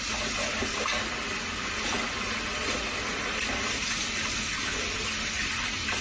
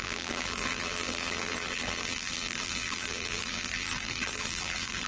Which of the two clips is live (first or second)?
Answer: first